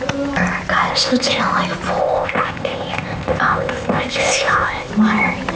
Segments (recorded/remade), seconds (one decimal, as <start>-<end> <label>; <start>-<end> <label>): 0.0-0.9 recorded; 0.9-1.4 remade; 1.4-2.0 recorded; 2.0-4.9 remade; 4.9-5.6 recorded